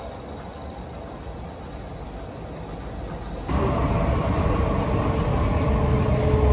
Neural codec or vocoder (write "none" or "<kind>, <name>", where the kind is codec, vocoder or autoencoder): none